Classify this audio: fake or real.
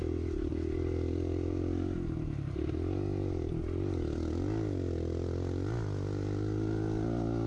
real